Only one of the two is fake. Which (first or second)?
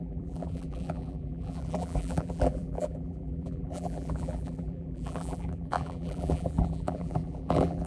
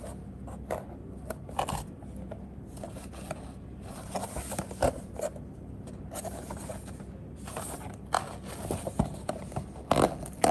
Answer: first